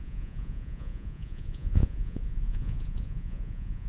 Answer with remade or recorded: remade